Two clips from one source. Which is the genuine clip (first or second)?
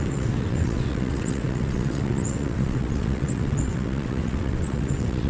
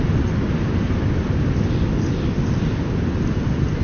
second